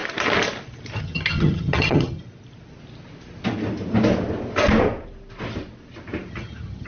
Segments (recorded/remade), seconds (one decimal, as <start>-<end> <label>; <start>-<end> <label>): 0.0-1.0 recorded; 1.0-2.2 remade; 2.2-6.3 recorded; 6.3-6.9 remade